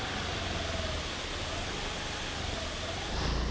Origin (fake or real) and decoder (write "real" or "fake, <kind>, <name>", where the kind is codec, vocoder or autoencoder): real